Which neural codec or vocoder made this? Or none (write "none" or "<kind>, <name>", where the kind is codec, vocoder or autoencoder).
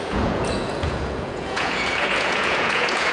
vocoder, Vocos